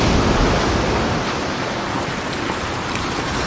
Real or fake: real